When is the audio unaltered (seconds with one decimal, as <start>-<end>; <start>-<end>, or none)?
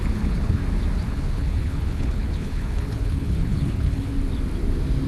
0.6-1.1; 4.1-5.1